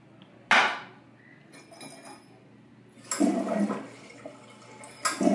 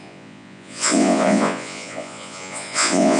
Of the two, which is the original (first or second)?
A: first